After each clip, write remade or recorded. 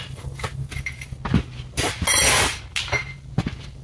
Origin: recorded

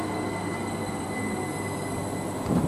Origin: recorded